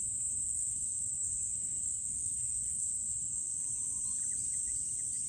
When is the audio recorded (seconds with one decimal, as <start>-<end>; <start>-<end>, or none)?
0.0-0.4; 3.6-5.3